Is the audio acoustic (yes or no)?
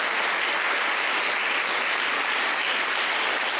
yes